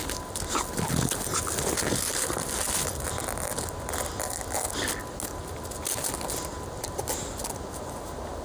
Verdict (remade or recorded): recorded